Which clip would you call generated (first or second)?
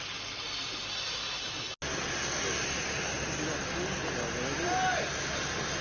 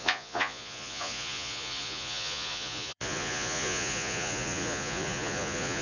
second